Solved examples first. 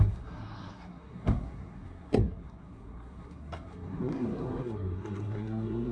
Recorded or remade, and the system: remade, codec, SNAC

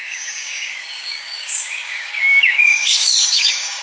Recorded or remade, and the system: remade, codec, DAC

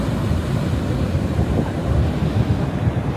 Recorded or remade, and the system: recorded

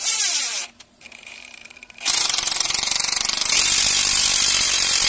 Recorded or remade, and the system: remade, vocoder, BigVGAN v2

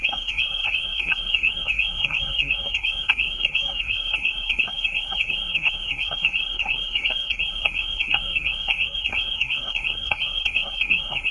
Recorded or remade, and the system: remade, codec, SNAC